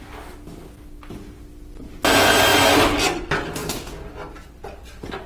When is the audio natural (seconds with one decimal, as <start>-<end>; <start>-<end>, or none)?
0.0-5.3